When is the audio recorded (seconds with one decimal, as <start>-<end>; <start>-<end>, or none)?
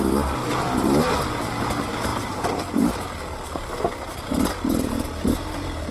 0.0-2.1; 3.7-5.9